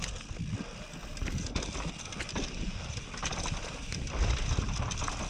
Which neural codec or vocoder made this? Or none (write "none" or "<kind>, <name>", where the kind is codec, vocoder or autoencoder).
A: none